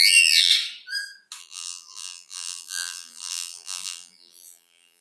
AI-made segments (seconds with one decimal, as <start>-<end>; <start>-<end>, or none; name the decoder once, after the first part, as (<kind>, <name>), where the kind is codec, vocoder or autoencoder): 0.0-0.5 (vocoder, BigVGAN v2); 1.4-5.0

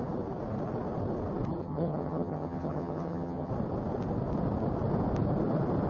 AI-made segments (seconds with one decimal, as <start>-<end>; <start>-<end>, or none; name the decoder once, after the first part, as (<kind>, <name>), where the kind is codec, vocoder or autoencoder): 1.6-3.5 (vocoder, HiFi-GAN)

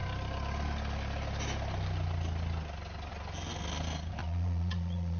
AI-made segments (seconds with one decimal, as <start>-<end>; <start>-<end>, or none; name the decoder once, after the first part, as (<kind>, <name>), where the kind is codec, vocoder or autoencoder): 4.2-5.2 (vocoder, Vocos)

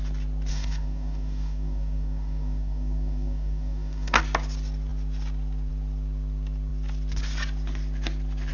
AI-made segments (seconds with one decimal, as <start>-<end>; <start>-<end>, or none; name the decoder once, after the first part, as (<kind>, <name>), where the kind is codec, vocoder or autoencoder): 0.5-4.2 (codec, DAC)